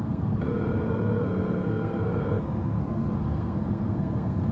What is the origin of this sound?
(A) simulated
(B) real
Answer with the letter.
A